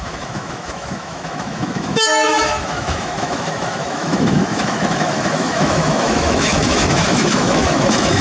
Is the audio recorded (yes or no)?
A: no